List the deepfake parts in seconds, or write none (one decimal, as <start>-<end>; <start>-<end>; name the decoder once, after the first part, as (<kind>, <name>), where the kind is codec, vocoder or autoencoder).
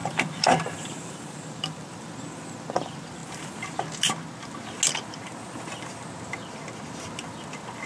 0.0-2.1 (vocoder, BigVGAN v2)